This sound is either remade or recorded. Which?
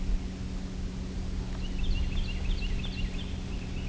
recorded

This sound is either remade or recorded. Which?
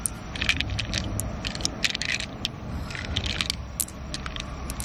recorded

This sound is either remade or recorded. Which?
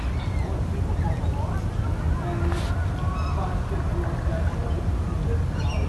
recorded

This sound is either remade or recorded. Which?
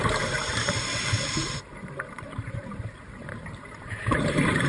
remade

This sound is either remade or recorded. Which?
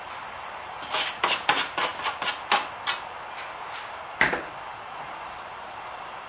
recorded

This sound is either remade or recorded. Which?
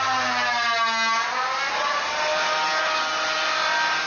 recorded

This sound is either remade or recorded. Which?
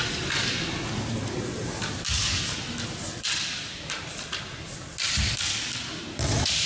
recorded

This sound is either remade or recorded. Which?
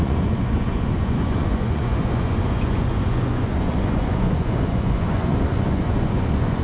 remade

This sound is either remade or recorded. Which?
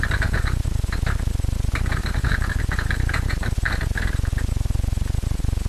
recorded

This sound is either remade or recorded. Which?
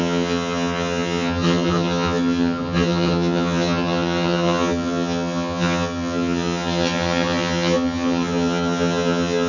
remade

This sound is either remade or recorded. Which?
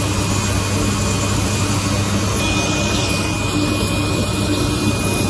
recorded